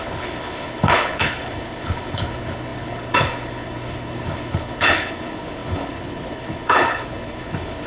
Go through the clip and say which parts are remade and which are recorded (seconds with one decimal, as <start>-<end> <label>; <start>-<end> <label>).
0.0-7.9 remade